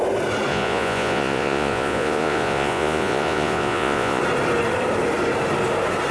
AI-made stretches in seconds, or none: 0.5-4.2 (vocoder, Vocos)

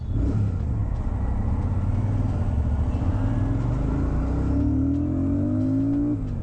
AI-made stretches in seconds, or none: none

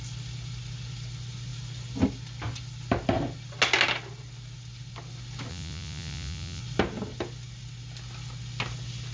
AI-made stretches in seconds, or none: 5.5-6.6 (vocoder, Vocos)

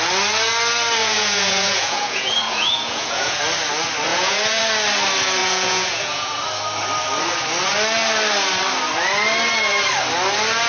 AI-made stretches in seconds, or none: 1.0-3.4 (vocoder, Vocos); 4.1-4.6; 5.4-6.4

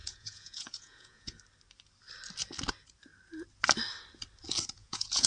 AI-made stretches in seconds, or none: 0.0-1.4 (vocoder, Vocos); 4.8-5.3

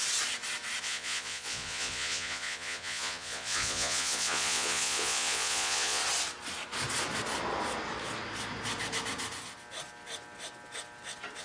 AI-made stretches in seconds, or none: 0.8-6.0 (vocoder, Vocos)

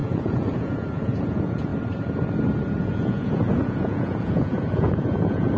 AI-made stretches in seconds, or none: 0.0-1.7 (vocoder, Vocos); 2.8-5.6